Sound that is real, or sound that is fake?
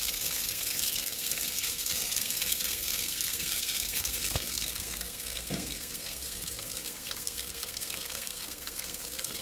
fake